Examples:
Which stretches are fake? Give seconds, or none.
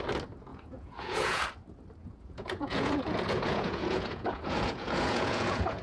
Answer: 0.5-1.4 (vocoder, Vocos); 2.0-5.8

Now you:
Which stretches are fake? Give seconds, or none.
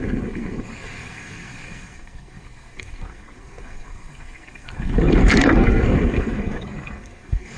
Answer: 0.0-7.6 (codec, SNAC)